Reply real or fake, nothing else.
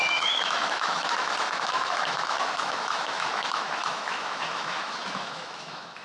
fake